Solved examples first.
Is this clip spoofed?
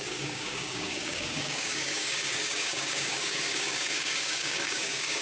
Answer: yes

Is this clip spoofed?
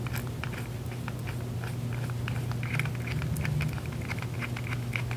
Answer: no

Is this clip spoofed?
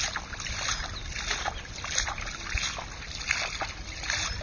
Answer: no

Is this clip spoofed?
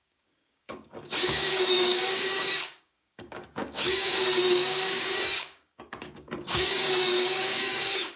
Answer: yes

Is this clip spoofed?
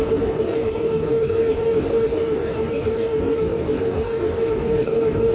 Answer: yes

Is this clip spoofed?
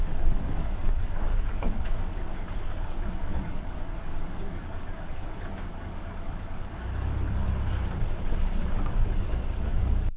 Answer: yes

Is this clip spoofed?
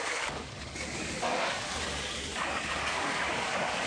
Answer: yes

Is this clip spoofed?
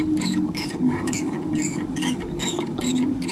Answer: yes